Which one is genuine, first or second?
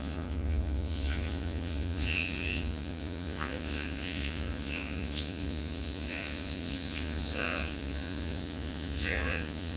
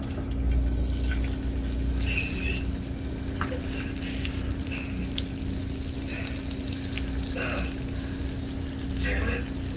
second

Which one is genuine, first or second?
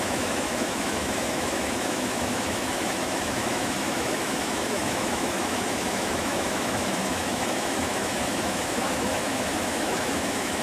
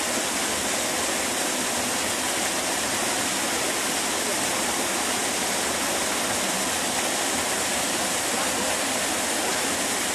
second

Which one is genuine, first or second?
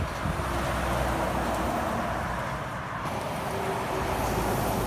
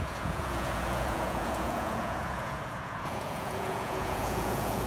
first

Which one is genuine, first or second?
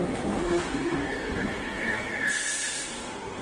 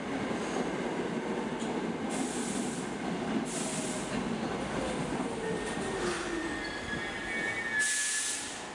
second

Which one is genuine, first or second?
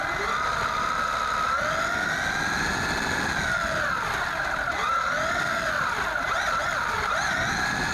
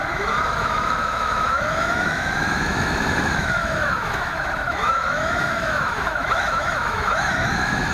first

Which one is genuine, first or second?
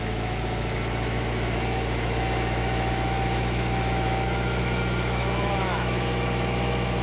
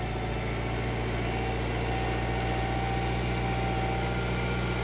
second